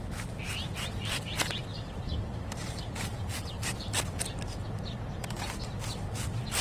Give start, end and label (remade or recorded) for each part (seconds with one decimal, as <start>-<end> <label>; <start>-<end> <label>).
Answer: 0.0-1.7 recorded; 1.7-4.0 remade; 4.0-6.6 recorded